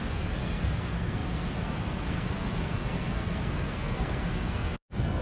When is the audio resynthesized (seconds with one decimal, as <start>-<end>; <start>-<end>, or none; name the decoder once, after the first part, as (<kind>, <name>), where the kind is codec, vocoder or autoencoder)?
0.0-5.2 (codec, SNAC)